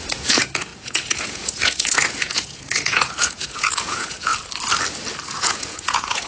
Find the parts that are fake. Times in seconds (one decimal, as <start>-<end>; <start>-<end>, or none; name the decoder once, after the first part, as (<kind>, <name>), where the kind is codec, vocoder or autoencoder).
0.0-4.3 (vocoder, Vocos); 5.2-6.3